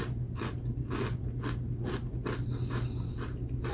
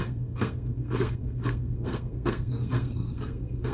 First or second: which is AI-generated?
second